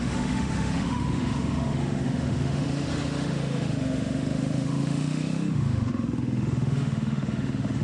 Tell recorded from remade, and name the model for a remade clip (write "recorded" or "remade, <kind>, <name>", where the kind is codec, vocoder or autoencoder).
remade, autoencoder, DAC-VAE